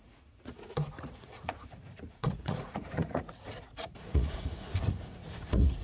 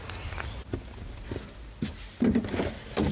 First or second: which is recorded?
second